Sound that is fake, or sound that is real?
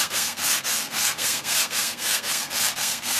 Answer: fake